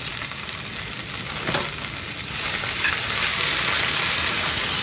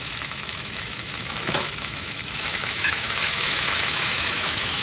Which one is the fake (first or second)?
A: second